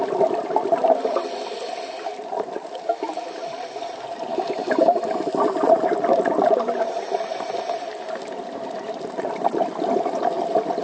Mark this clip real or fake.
real